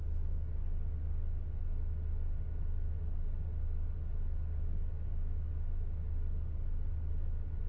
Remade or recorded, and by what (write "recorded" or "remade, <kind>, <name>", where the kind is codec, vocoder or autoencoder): recorded